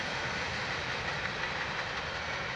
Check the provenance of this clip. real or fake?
real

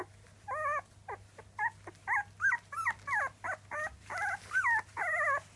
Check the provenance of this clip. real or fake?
real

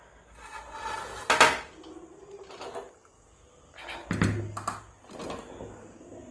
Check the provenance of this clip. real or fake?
real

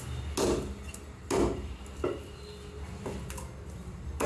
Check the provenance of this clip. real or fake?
real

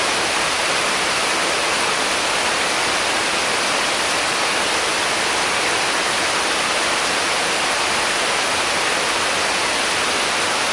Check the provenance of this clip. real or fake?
real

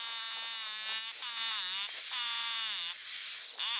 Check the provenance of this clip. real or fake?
real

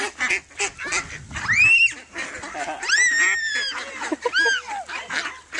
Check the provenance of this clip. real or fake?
real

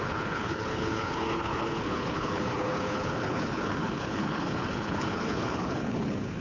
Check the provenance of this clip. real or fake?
fake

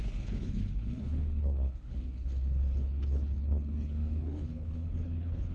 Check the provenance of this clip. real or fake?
fake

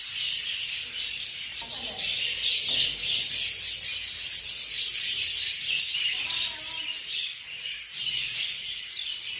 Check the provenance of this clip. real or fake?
real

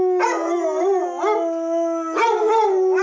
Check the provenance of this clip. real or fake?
real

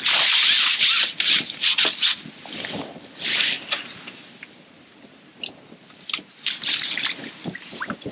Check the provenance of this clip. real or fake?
real